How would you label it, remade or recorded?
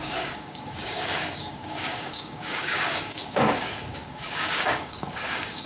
remade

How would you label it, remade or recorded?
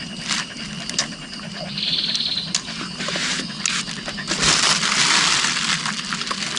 recorded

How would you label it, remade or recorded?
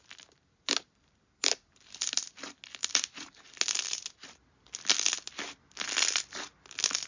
recorded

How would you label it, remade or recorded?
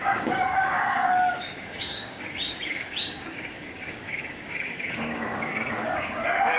remade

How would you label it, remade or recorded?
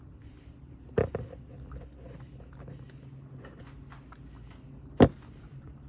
recorded